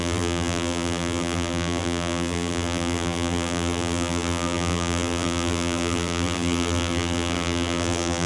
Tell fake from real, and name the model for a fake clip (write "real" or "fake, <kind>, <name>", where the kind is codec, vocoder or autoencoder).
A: fake, vocoder, BigVGAN v2